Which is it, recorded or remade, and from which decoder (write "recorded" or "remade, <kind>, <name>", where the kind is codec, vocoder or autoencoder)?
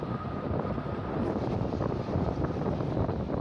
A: remade, vocoder, BigVGAN v2